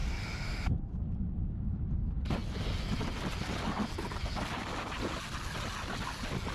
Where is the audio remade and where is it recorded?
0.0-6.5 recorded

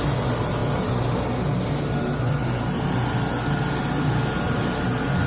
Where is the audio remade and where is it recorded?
0.0-5.3 recorded

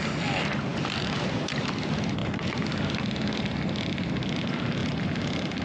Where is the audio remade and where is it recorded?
0.0-4.8 recorded; 4.8-5.6 remade

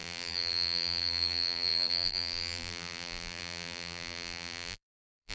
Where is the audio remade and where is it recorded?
0.0-5.3 remade

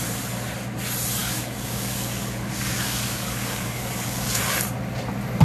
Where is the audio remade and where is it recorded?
0.0-1.2 recorded; 1.2-4.4 remade; 4.4-5.4 recorded

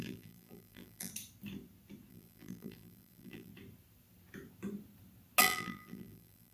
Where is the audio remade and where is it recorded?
0.0-1.1 remade; 1.1-2.1 recorded; 2.1-3.5 remade; 3.5-5.4 recorded; 5.4-6.5 remade

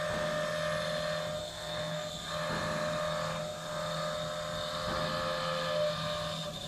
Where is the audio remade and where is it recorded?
0.0-1.4 recorded; 1.4-2.1 remade; 2.1-6.7 recorded

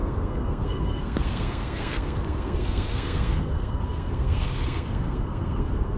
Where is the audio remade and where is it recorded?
0.0-6.0 remade